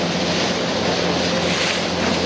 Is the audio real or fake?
real